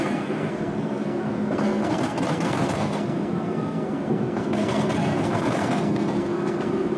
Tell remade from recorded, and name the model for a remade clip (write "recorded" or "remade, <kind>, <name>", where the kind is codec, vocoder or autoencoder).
remade, codec, SNAC